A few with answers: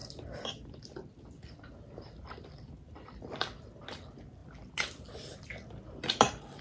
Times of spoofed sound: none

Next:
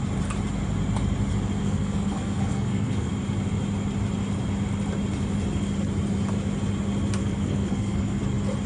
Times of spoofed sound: 1.6-3.1 (codec, SNAC); 7.2-8.2

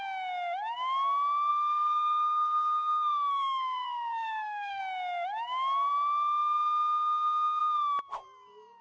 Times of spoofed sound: 1.5-4.8 (codec, SNAC)

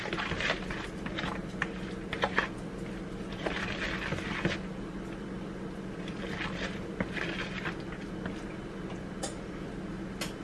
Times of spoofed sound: none